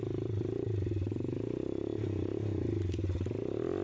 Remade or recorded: recorded